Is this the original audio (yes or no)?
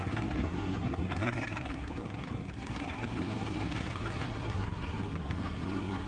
no